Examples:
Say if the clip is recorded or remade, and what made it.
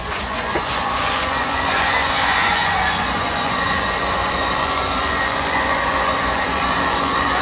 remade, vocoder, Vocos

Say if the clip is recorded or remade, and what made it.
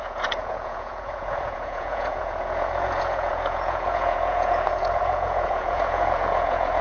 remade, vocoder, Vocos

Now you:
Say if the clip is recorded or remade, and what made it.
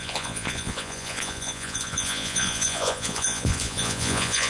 remade, vocoder, Vocos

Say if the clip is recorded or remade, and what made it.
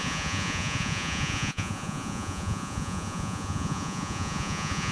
remade, vocoder, Vocos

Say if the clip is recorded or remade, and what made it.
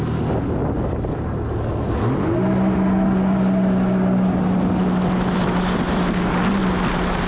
recorded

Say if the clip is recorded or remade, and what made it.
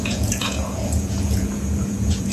remade, vocoder, Vocos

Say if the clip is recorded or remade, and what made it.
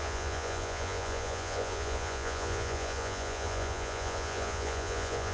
remade, vocoder, Vocos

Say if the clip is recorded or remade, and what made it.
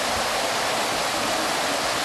recorded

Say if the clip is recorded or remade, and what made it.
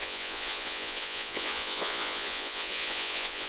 remade, vocoder, Vocos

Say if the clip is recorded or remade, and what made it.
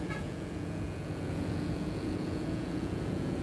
remade, vocoder, Vocos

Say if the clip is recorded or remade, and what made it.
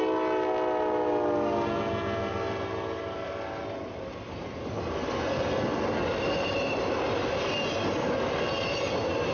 recorded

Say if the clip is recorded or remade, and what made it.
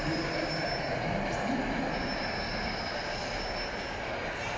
recorded